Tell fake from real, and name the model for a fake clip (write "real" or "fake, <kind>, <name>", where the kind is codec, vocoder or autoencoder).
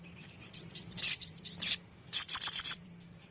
real